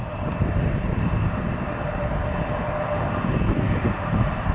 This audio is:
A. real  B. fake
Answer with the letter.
B